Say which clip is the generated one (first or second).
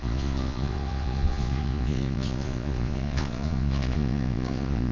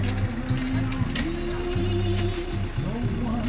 first